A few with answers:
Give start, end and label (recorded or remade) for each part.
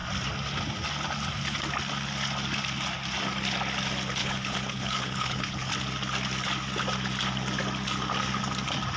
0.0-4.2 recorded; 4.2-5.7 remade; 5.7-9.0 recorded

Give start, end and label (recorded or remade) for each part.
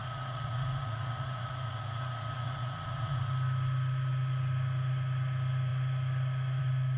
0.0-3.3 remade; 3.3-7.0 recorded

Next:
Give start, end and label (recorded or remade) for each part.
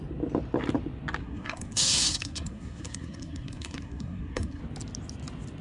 0.0-1.2 recorded; 1.2-4.6 remade; 4.6-5.6 recorded